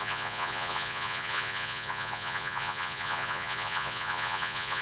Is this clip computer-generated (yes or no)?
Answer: yes